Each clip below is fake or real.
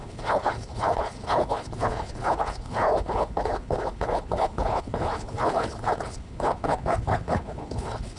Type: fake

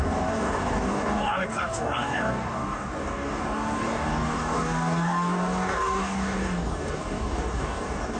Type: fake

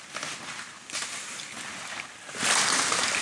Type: real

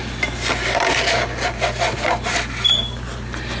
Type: real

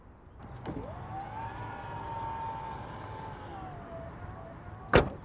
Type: real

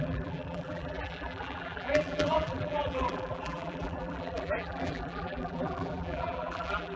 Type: fake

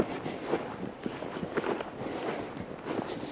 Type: real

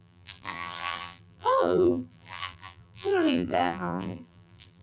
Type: fake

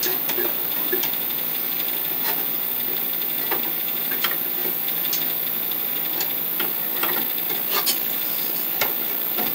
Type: real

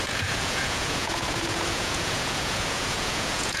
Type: fake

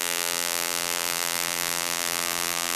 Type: fake